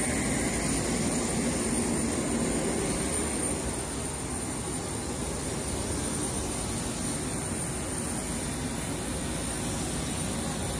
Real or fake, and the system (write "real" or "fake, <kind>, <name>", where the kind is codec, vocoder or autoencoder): real